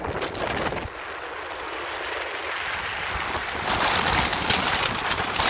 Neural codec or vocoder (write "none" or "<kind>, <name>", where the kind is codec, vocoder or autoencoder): none